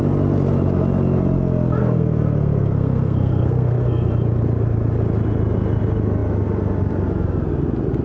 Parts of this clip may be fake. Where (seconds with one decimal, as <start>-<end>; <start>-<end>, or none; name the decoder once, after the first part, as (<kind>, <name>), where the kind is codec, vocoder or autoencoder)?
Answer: 1.8-4.1 (codec, SNAC)